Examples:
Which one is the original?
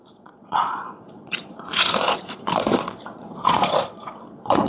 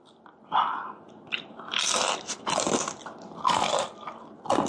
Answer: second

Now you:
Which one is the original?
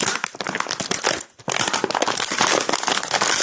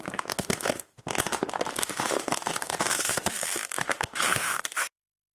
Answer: first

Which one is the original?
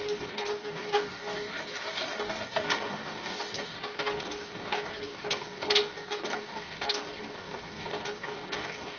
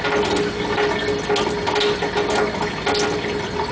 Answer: second